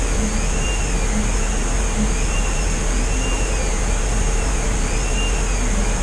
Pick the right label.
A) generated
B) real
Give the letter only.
B